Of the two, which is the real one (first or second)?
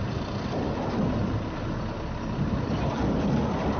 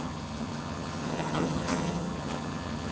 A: first